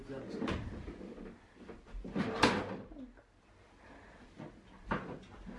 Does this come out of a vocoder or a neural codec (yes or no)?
no